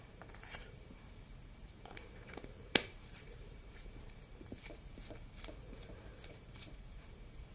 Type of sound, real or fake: fake